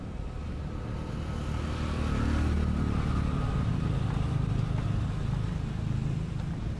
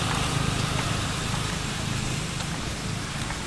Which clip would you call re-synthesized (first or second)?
second